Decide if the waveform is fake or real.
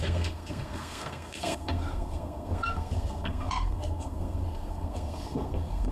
fake